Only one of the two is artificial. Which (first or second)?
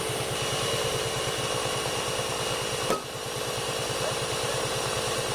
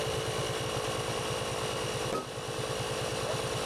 first